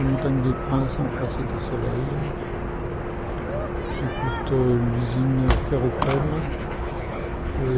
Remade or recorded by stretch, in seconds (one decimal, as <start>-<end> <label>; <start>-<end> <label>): 0.0-0.7 recorded; 0.7-1.5 remade; 1.5-6.2 recorded; 6.2-7.8 remade